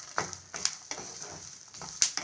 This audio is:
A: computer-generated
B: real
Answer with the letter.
B